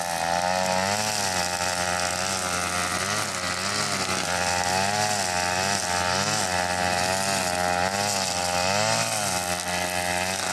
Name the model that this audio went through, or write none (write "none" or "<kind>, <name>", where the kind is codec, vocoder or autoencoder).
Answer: none